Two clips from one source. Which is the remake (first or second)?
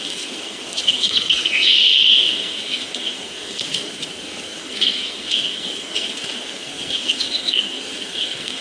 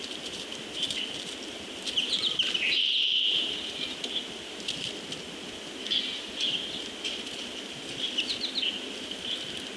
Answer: first